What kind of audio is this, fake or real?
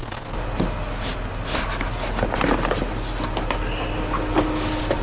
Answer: real